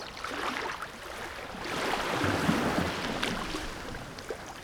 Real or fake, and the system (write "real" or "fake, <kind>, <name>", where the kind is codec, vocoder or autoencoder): real